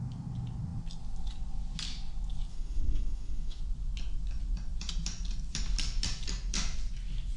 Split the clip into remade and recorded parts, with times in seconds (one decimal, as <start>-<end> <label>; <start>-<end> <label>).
0.0-2.5 recorded; 2.5-3.6 remade; 3.6-7.4 recorded